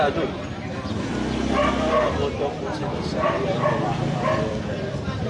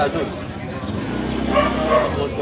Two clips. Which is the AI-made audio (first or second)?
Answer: first